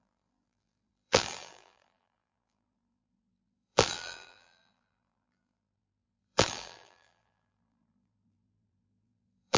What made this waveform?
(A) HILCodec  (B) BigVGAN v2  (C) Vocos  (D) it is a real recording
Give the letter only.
B